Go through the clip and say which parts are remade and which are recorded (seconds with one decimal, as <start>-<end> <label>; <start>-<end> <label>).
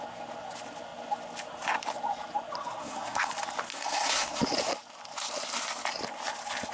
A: 0.0-2.8 recorded; 2.8-3.3 remade; 3.3-3.7 recorded; 3.7-4.4 remade; 4.4-6.7 recorded